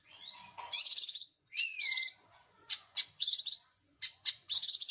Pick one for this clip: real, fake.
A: fake